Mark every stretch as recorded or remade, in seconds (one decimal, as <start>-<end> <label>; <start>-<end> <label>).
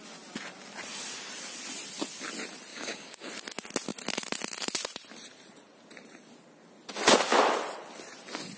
0.0-2.7 recorded; 2.7-3.3 remade; 3.3-8.6 recorded